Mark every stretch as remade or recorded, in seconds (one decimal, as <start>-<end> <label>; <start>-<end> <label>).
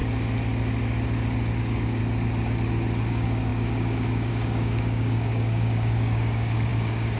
0.0-1.6 recorded; 1.6-2.0 remade; 2.0-3.1 recorded; 3.1-7.2 remade